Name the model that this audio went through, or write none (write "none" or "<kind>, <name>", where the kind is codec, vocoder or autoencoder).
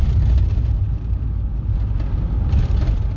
none